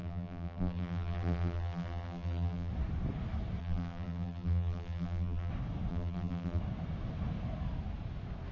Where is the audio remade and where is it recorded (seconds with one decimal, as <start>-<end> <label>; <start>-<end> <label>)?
0.0-2.7 remade; 2.7-3.6 recorded; 3.6-5.5 remade; 5.5-5.9 recorded; 5.9-6.6 remade; 6.6-8.5 recorded